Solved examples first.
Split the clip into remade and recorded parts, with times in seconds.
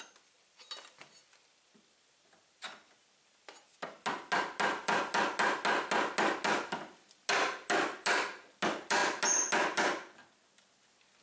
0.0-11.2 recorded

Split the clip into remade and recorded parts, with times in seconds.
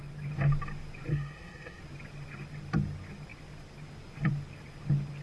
0.0-1.1 recorded; 1.1-1.8 remade; 1.8-5.2 recorded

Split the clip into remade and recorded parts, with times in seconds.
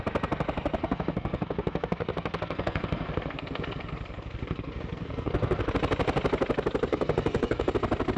0.0-0.8 recorded; 0.8-5.7 remade; 5.7-6.9 recorded; 6.9-7.7 remade; 7.7-8.2 recorded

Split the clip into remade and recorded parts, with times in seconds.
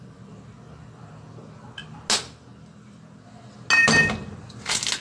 0.0-5.0 recorded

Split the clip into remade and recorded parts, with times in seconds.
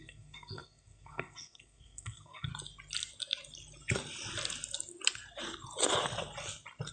0.0-2.5 remade; 2.5-6.9 recorded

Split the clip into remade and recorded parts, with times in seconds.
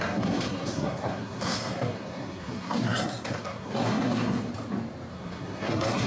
0.0-4.5 remade; 4.5-5.1 recorded; 5.1-6.1 remade